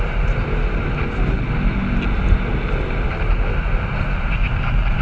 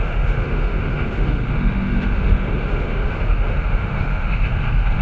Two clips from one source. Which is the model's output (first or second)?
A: second